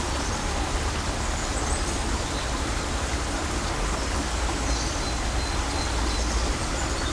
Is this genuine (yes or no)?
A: yes